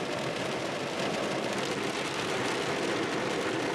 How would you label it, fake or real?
real